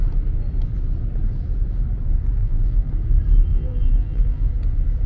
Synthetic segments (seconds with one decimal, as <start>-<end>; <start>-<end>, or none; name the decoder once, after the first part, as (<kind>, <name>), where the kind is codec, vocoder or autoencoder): 2.4-2.9 (vocoder, BigVGAN v2); 3.5-4.5